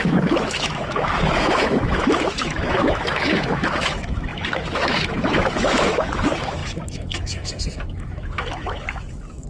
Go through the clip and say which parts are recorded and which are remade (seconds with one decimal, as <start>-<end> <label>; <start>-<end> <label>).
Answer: 0.0-9.5 remade